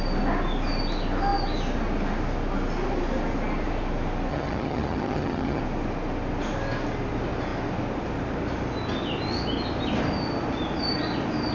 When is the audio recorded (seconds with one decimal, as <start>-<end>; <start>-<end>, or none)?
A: 0.0-4.3; 5.6-11.5